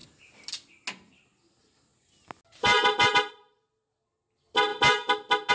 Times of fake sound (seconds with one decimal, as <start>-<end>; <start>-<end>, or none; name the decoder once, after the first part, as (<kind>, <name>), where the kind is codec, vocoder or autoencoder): none